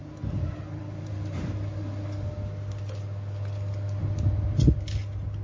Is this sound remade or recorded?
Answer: recorded